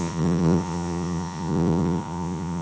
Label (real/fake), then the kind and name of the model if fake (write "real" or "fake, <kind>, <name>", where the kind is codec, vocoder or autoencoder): fake, vocoder, Vocos